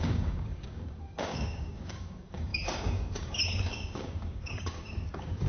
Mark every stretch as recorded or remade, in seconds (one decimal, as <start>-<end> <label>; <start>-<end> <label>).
0.0-5.5 remade